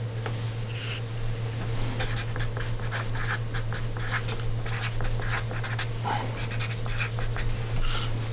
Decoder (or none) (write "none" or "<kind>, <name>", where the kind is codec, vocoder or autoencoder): none